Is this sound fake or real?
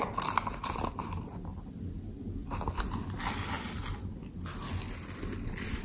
real